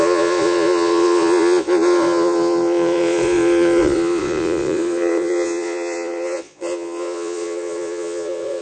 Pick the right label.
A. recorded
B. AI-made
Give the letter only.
B